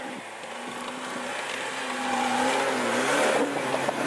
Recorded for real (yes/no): yes